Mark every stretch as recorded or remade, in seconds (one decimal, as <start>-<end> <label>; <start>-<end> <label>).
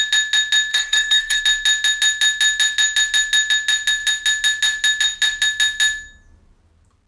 0.0-0.7 recorded; 0.7-1.4 remade; 1.4-7.1 recorded